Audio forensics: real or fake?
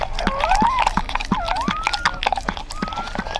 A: real